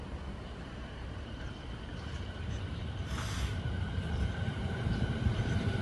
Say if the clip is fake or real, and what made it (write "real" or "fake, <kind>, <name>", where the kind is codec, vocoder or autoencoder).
fake, vocoder, BigVGAN v2